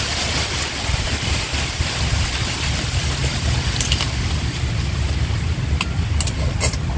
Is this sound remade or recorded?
remade